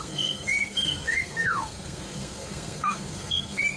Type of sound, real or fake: fake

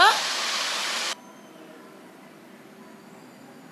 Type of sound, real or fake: real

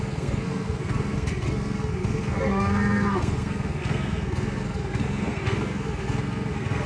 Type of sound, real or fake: fake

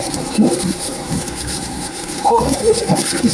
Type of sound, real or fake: fake